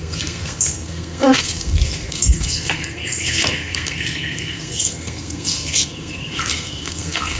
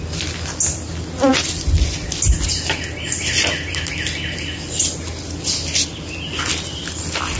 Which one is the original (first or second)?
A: second